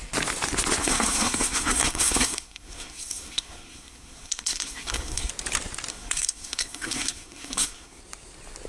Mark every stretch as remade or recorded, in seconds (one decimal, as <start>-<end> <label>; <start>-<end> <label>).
0.0-0.8 recorded; 0.8-5.3 remade; 5.3-5.9 recorded; 5.9-8.0 remade; 8.0-8.7 recorded

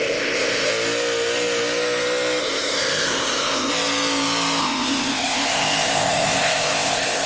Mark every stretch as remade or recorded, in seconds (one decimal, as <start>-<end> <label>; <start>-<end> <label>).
0.0-0.7 remade; 0.7-2.4 recorded; 2.4-3.7 remade; 3.7-4.6 recorded; 4.6-7.3 remade